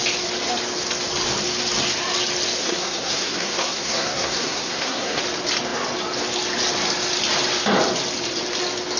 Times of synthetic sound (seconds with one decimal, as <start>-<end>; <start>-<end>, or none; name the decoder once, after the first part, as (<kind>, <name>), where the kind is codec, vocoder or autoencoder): 2.6-5.2 (codec, SNAC)